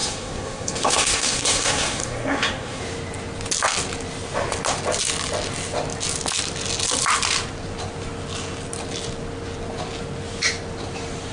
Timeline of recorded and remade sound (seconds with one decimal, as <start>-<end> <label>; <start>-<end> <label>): 0.0-2.8 remade; 2.8-11.3 recorded